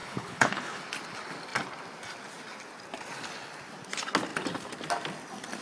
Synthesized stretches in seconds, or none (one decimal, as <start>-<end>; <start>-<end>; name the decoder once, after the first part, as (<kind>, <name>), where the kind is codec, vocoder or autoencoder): 0.0-0.8 (codec, HILCodec)